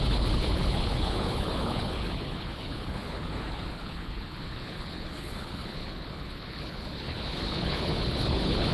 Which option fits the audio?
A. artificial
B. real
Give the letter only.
A